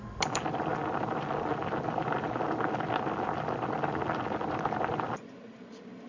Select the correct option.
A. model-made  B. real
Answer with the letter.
B